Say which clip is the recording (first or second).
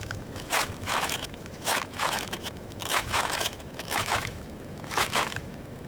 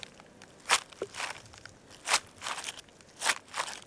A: second